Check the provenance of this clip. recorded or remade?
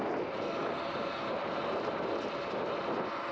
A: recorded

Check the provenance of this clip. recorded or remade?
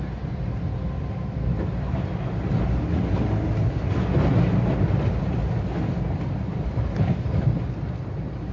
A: recorded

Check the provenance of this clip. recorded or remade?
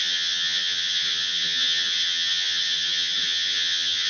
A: remade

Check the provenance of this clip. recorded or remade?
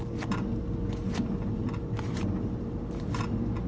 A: recorded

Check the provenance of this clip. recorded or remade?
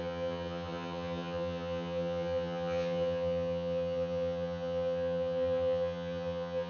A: remade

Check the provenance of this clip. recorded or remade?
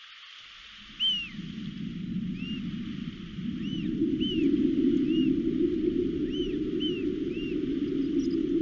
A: recorded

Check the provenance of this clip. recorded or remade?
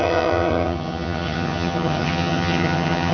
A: remade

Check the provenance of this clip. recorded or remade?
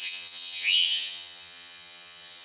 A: remade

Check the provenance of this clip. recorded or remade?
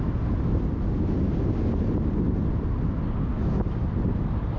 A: recorded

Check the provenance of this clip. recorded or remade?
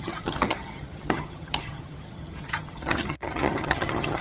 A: remade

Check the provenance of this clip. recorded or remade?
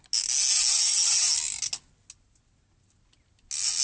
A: recorded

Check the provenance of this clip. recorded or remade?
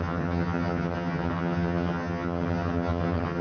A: remade